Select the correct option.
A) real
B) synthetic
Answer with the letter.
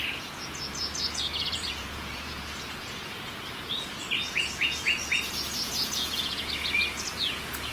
B